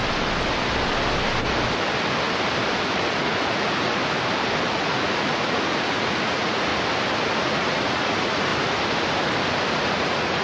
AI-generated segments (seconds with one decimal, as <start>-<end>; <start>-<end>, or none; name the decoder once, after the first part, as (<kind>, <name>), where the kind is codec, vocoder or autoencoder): 2.8-4.0 (vocoder, Vocos); 4.7-6.7; 7.3-8.5; 9.8-10.4